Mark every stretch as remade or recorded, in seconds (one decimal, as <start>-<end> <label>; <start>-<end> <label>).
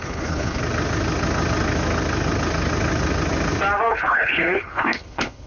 0.0-0.6 remade; 0.6-3.9 recorded; 3.9-5.5 remade